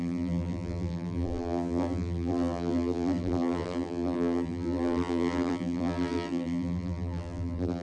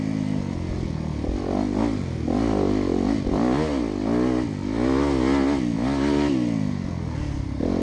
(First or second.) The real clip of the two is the second